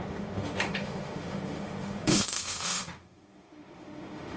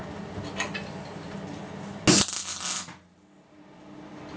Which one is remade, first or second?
first